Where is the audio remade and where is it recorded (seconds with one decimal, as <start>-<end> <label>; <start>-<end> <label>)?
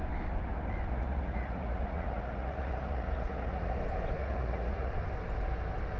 0.0-0.9 recorded; 0.9-3.8 remade; 3.8-4.2 recorded; 4.2-4.9 remade; 4.9-6.0 recorded